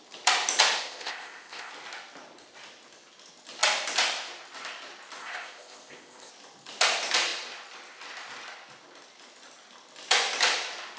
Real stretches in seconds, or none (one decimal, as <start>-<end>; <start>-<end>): 0.0-0.8; 1.7-5.2; 6.3-11.0